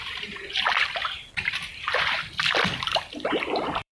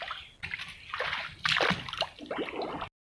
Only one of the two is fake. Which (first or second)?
first